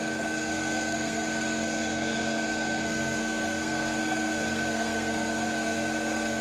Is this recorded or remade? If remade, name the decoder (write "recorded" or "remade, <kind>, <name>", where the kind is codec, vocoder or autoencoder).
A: remade, codec, SNAC